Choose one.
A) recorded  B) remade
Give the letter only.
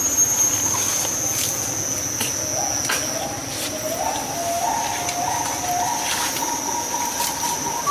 A